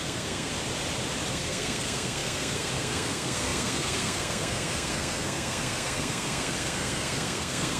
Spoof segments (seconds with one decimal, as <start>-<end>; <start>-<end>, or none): 0.0-0.5; 1.3-7.8